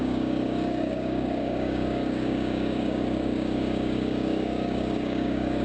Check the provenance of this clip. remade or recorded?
remade